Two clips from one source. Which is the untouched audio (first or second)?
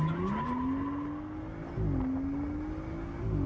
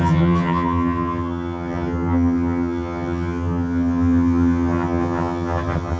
first